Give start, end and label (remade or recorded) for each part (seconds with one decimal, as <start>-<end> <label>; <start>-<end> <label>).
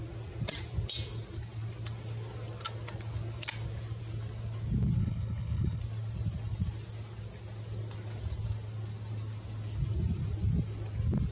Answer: 0.0-5.0 recorded; 5.0-5.8 remade; 5.8-11.3 recorded